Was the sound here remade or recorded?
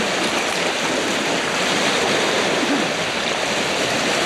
recorded